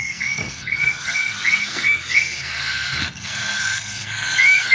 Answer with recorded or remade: remade